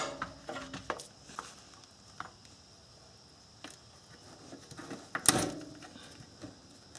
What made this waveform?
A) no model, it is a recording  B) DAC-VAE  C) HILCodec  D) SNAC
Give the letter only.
A